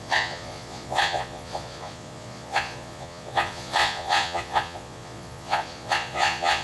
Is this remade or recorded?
remade